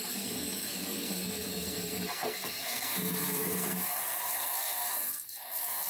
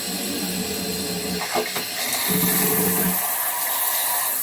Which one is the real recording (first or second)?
second